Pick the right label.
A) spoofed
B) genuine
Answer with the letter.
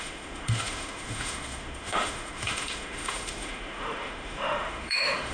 A